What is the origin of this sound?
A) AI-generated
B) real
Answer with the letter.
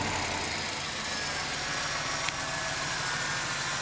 B